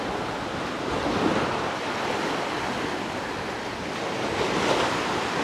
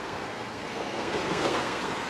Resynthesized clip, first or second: second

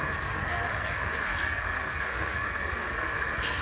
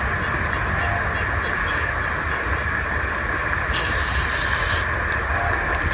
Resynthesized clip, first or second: first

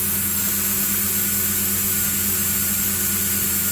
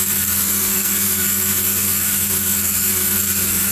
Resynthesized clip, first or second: second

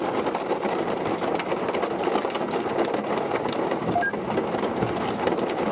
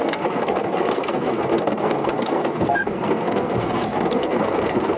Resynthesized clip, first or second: second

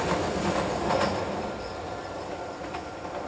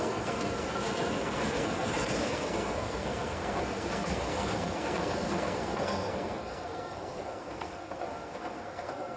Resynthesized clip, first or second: second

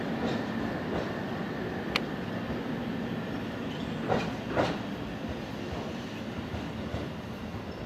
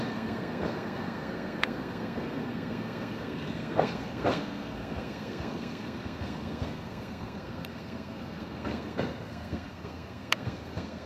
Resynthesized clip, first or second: second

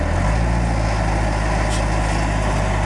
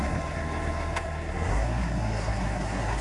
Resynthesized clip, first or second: second